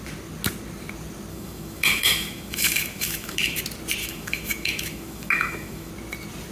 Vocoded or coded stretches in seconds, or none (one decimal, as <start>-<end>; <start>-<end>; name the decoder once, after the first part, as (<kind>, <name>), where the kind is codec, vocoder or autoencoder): 1.3-3.6 (autoencoder, DAC-VAE); 4.0-5.9